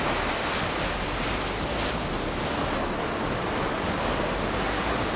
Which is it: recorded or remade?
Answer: recorded